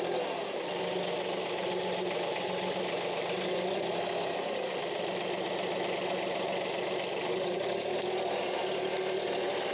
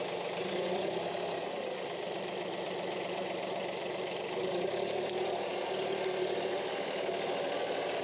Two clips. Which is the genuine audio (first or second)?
first